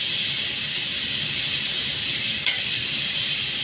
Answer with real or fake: real